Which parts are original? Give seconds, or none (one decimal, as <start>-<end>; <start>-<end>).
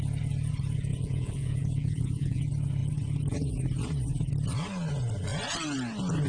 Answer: 0.0-0.9; 2.4-6.3